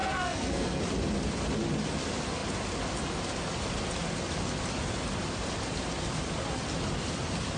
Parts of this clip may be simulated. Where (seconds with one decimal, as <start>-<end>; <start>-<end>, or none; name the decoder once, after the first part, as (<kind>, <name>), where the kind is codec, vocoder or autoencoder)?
0.0-0.8 (codec, SNAC)